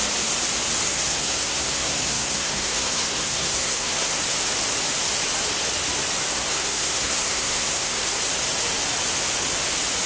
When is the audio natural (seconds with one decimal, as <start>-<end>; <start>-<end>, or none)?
0.0-0.9; 4.1-6.3; 8.2-10.1